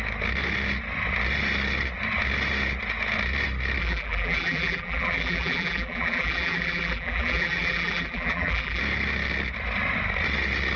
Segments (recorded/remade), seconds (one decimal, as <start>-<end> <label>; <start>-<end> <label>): 0.0-3.8 recorded; 3.8-8.8 remade; 8.8-10.8 recorded